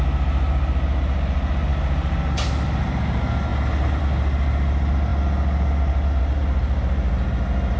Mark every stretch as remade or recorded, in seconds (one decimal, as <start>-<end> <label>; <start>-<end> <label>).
0.0-7.8 recorded